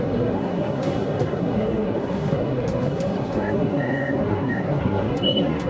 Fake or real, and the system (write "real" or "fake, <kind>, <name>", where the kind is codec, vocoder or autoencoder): fake, codec, SNAC